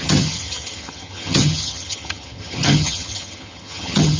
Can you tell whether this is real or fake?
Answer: fake